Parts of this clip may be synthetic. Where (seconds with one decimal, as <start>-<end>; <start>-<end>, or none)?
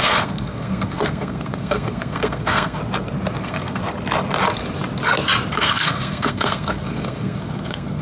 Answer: 0.0-2.8; 3.4-3.8; 5.5-8.0